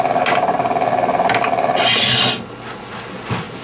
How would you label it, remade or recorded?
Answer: recorded